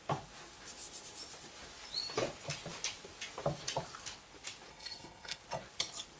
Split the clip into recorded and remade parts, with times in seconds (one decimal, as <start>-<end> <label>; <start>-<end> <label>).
0.0-4.7 recorded; 4.7-5.4 remade; 5.4-6.2 recorded